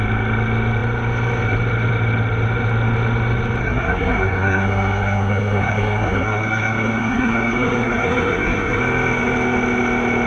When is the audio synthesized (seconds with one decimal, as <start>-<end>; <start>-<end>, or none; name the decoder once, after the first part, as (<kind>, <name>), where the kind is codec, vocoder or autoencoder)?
3.6-8.8 (codec, SNAC)